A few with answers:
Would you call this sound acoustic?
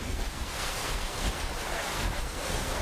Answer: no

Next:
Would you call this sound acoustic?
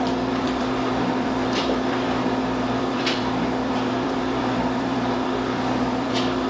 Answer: no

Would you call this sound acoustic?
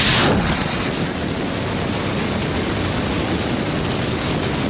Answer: yes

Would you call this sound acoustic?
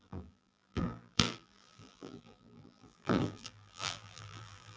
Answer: no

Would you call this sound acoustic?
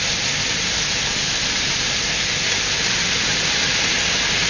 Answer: yes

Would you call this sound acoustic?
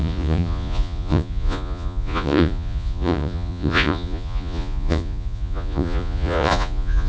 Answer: no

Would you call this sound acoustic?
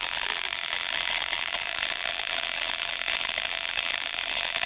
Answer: no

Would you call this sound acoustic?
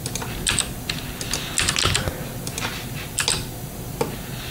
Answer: yes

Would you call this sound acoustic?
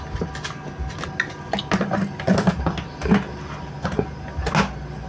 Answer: yes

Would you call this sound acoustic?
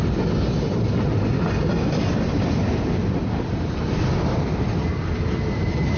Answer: yes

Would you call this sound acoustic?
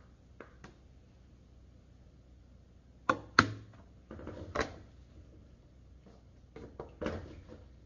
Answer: yes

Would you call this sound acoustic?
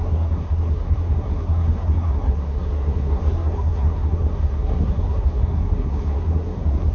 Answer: no